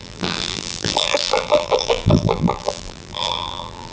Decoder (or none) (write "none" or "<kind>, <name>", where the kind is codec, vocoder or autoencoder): vocoder, BigVGAN v2